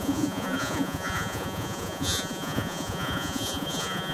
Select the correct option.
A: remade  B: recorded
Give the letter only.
A